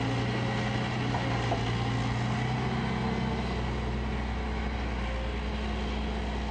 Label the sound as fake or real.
real